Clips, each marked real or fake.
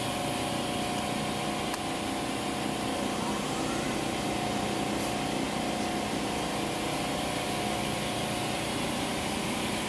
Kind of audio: real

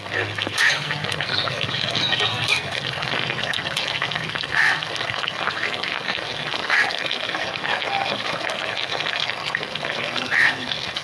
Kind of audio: fake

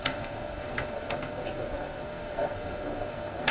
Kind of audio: fake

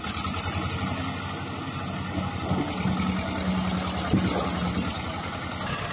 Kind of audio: real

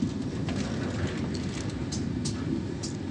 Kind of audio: real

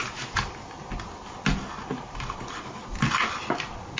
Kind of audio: real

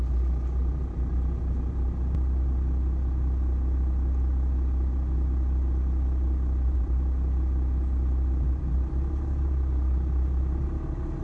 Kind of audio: real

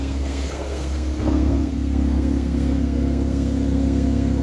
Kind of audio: fake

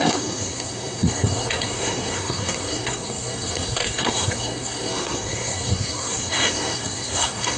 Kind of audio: fake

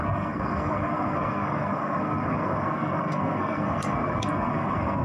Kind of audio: fake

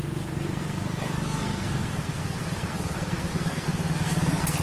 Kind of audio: fake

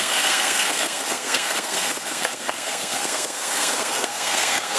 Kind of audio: fake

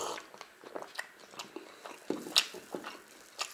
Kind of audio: real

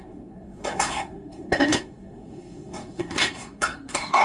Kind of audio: fake